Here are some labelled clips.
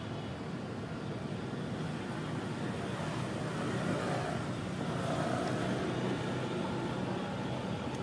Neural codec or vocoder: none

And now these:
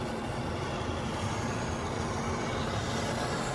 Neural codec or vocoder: none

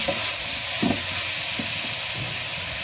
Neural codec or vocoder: none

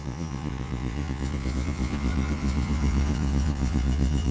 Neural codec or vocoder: vocoder, Vocos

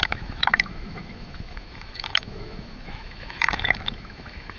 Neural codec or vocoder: autoencoder, DAC-VAE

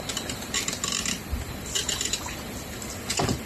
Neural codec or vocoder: vocoder, BigVGAN v2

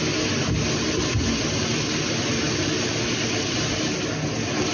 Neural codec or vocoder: none